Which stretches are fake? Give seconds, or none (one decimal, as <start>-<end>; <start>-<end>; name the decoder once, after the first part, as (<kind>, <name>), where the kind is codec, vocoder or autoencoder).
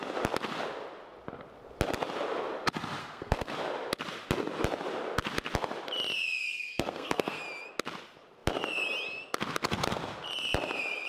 3.0-3.5 (codec, SNAC); 6.5-7.4